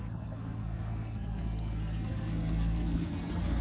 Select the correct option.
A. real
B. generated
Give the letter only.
B